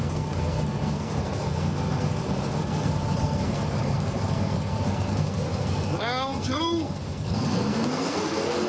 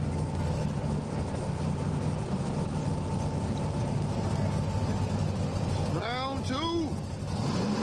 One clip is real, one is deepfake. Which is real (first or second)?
second